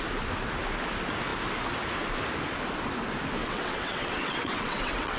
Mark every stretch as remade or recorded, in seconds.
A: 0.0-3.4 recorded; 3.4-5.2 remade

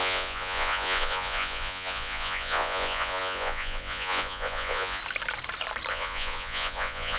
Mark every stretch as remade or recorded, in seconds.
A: 0.0-5.0 remade; 5.0-5.9 recorded; 5.9-7.2 remade

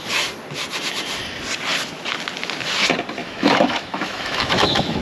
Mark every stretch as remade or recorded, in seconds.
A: 0.0-3.2 recorded; 3.2-5.0 remade

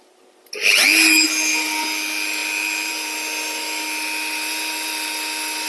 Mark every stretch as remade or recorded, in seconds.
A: 0.0-5.7 recorded

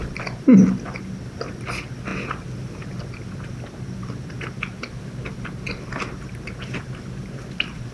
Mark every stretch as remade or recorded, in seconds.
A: 0.0-7.9 recorded

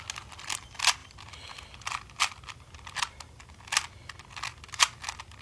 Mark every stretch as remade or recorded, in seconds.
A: 0.0-5.4 recorded

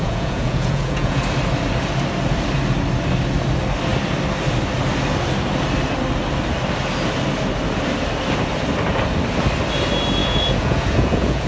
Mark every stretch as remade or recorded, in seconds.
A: 0.0-1.2 remade; 1.2-10.2 recorded; 10.2-11.5 remade

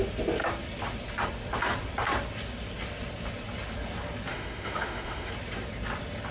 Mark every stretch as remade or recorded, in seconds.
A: 0.0-4.3 recorded; 4.3-5.3 remade; 5.3-6.3 recorded